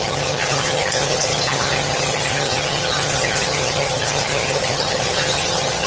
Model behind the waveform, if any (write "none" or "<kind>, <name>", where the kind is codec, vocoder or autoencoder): vocoder, HiFi-GAN